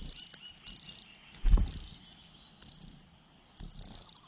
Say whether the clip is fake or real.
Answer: real